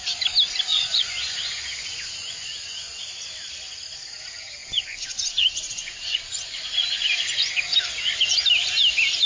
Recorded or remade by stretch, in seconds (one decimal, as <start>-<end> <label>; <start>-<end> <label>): 0.0-0.7 recorded; 0.7-3.0 remade; 3.0-4.6 recorded; 4.6-7.5 remade; 7.5-9.3 recorded